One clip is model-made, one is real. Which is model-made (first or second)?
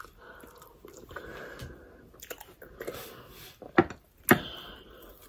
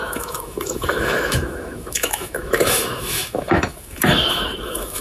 second